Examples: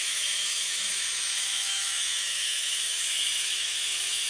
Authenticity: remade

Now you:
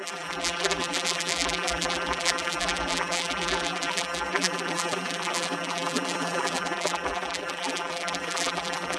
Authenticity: remade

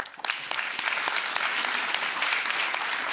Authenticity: recorded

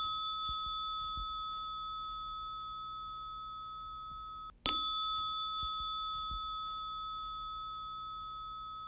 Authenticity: recorded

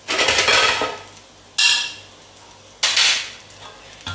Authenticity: recorded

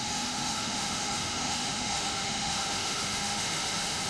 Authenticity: remade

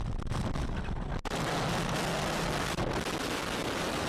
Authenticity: recorded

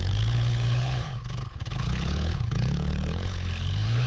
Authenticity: remade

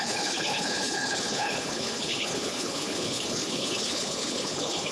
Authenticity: remade